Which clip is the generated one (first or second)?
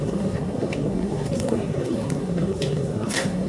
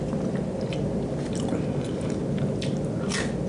first